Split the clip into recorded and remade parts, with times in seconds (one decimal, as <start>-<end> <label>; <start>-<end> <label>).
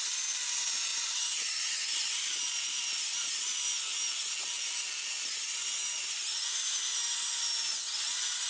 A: 0.0-8.5 recorded